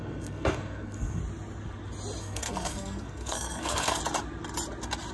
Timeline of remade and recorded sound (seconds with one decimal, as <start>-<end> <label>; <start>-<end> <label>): 0.0-1.2 remade; 1.2-2.2 recorded; 2.2-4.0 remade; 4.0-5.1 recorded